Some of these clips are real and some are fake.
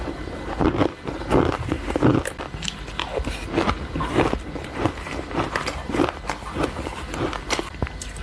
real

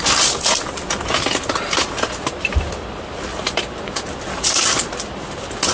real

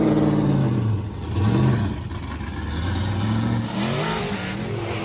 real